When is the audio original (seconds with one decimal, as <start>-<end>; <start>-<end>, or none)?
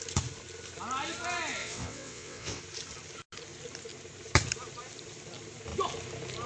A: 0.0-1.6; 2.6-6.5